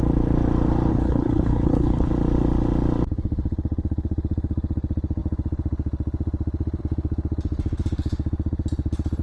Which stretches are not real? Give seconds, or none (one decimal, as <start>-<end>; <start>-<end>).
0.9-2.1